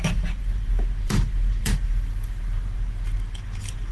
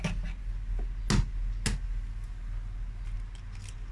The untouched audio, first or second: second